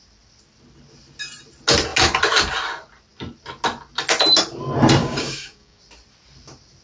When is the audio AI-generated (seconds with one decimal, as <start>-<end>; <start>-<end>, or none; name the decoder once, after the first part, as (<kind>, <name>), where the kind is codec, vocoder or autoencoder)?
5.0-5.8 (codec, DAC)